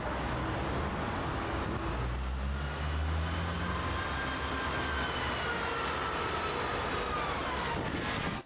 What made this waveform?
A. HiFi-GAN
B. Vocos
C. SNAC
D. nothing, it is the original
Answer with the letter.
D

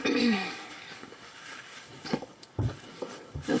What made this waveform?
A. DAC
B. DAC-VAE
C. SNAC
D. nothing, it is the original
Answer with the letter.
A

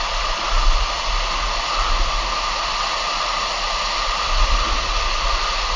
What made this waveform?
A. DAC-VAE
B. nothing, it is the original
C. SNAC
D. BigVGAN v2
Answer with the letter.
B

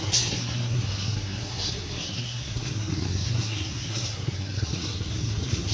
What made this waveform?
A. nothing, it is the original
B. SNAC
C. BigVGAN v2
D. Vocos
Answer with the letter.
B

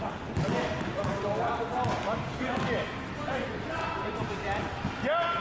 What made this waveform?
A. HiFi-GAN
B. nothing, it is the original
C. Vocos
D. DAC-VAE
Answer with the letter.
B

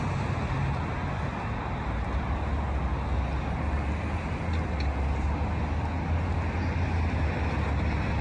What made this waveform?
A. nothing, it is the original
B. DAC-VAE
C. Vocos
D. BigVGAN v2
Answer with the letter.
A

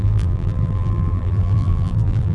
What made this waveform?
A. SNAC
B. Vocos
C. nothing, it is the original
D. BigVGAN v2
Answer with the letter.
D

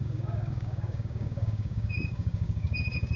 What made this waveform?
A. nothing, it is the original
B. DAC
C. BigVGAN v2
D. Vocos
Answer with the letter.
B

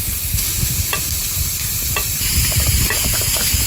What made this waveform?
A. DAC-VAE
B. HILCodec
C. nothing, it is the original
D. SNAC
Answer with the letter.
C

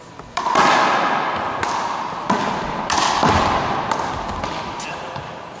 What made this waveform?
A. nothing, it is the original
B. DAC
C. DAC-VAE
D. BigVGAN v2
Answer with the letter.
A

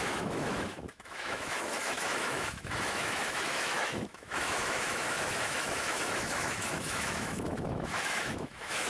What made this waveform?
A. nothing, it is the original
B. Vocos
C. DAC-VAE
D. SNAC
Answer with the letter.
C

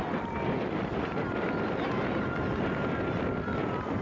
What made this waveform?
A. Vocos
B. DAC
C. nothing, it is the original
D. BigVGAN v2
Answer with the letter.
D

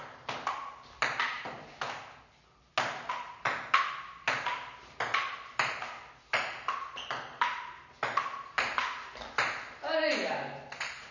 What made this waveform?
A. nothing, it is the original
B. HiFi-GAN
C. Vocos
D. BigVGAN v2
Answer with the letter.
A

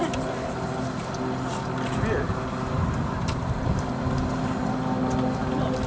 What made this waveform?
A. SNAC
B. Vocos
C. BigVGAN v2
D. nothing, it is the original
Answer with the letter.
D